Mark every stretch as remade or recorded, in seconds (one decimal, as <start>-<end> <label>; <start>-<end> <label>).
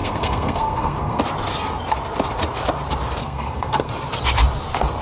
0.0-1.2 remade; 1.2-3.2 recorded; 3.2-3.9 remade; 3.9-5.0 recorded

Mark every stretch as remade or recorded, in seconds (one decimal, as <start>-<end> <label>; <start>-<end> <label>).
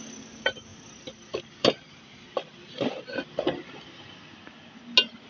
0.0-5.3 recorded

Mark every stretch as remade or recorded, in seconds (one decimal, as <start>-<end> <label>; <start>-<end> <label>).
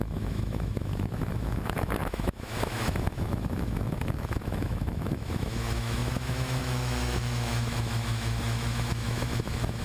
0.0-9.8 remade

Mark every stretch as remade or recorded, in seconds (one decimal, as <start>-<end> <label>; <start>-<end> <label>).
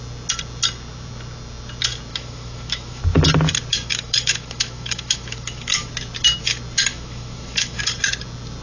0.0-2.1 recorded; 2.1-3.0 remade; 3.0-3.7 recorded; 3.7-5.9 remade; 5.9-6.9 recorded; 6.9-7.8 remade; 7.8-8.6 recorded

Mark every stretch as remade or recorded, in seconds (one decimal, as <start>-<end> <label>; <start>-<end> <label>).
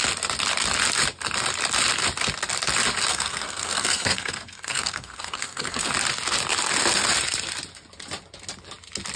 0.0-3.1 recorded; 3.1-5.9 remade; 5.9-9.2 recorded